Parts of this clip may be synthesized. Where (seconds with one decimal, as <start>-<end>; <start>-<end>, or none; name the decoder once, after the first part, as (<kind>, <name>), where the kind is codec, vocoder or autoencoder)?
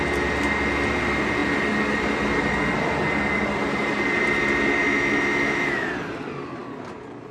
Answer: 4.8-5.9 (autoencoder, DAC-VAE)